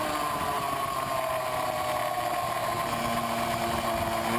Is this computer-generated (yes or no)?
no